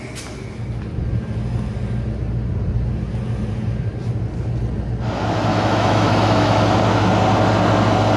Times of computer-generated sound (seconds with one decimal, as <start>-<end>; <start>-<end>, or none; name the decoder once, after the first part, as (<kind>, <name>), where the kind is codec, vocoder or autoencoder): 5.5-6.6 (autoencoder, DAC-VAE)